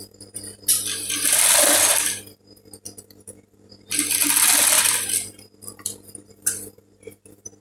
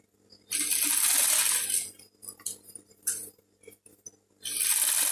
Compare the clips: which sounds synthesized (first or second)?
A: first